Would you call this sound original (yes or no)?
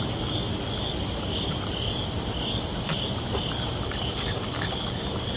yes